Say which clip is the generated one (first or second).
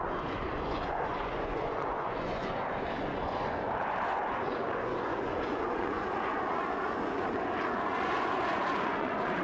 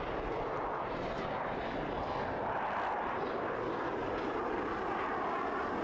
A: first